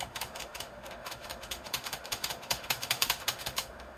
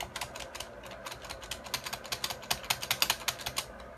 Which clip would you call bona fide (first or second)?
second